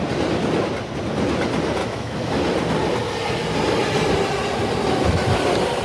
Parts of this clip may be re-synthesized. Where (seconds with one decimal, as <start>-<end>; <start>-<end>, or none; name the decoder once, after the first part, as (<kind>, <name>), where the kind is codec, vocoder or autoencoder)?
1.8-2.3 (autoencoder, DAC-VAE)